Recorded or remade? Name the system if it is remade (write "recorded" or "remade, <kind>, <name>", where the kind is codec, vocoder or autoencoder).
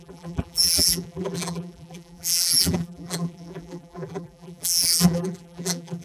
remade, vocoder, BigVGAN v2